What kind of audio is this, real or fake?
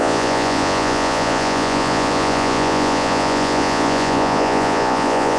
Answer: fake